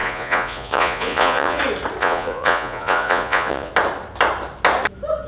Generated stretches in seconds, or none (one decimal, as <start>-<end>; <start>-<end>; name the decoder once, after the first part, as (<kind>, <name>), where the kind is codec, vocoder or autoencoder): 0.0-1.6 (vocoder, Vocos); 2.0-3.7